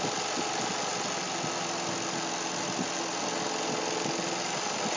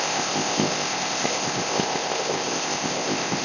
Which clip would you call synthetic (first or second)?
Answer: second